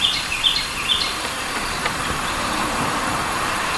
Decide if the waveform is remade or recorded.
remade